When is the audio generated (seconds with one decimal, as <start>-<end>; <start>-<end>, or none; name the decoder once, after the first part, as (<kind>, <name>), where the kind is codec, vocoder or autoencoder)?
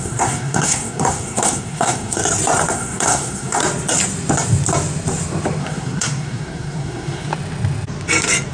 0.0-2.2 (codec, SNAC); 2.7-3.6; 5.6-7.3